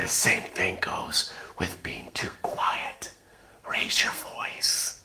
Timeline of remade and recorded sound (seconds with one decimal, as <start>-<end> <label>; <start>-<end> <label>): 0.0-0.6 remade; 0.6-1.7 recorded; 1.7-5.0 remade